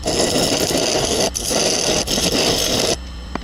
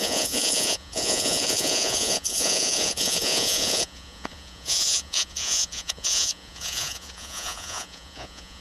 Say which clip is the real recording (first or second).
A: first